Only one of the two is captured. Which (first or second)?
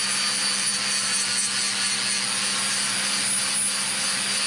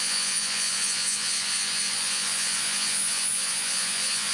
first